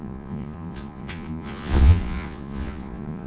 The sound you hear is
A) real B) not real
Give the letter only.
B